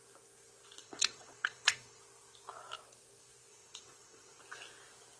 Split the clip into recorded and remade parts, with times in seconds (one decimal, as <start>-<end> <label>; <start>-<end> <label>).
0.0-0.8 recorded; 0.8-2.0 remade; 2.0-3.5 recorded; 3.5-4.4 remade; 4.4-5.2 recorded